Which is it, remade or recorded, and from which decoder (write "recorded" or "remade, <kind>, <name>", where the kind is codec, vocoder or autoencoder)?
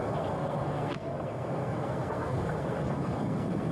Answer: remade, codec, SNAC